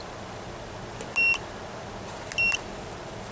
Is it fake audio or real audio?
real